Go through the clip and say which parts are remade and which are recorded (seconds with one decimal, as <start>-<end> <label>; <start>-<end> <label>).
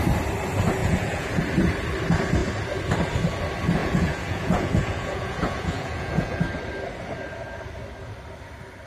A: 0.0-0.8 recorded; 0.8-1.4 remade; 1.4-3.8 recorded; 3.8-6.4 remade; 6.4-8.9 recorded